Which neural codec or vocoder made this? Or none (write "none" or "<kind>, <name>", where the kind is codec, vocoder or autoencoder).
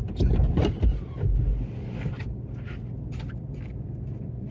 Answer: none